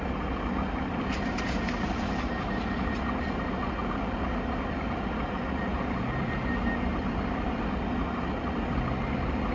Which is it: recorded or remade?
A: recorded